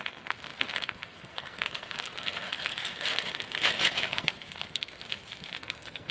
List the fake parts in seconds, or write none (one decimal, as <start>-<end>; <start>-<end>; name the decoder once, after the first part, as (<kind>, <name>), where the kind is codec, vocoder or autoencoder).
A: 0.0-6.1 (codec, SNAC)